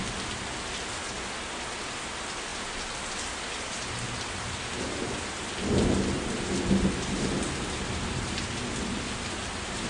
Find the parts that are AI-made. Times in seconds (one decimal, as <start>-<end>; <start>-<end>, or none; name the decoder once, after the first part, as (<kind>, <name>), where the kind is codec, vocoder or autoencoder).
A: none